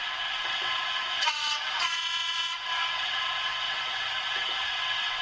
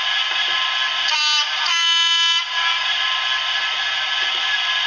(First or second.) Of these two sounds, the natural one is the second